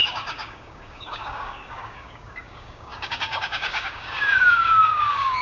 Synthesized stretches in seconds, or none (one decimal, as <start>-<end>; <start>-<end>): 0.0-5.4